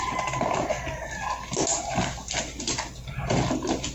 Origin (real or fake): real